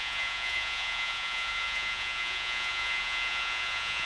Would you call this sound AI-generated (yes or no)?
yes